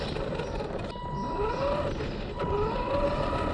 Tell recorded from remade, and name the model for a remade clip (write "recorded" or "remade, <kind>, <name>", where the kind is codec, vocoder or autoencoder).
recorded